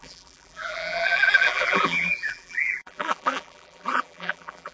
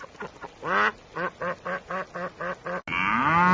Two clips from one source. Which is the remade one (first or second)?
first